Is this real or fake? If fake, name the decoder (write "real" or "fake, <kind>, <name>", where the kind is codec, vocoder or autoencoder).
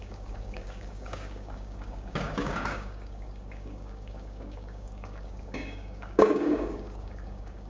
fake, codec, DAC